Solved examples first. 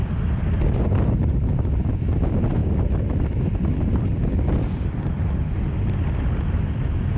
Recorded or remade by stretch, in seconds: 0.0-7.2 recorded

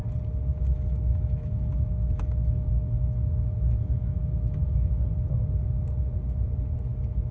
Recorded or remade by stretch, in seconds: 0.0-0.5 recorded; 0.5-4.9 remade; 4.9-7.3 recorded

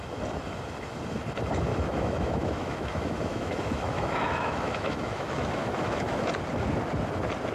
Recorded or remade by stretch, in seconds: 0.0-1.7 recorded; 1.7-6.2 remade; 6.2-7.5 recorded